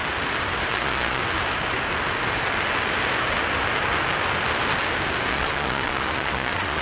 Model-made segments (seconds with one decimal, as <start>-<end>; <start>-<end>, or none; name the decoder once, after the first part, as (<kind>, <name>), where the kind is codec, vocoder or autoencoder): 0.7-1.2 (vocoder, Vocos); 5.3-6.8